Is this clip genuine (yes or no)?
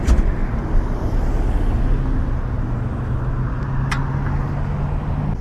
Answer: yes